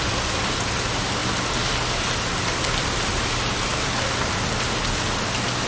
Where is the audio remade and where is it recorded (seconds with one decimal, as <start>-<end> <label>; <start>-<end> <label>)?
0.0-5.7 recorded